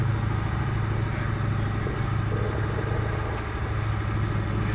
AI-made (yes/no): no